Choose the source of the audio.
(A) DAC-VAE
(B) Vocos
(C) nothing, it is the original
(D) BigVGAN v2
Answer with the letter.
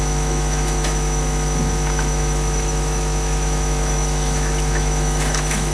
A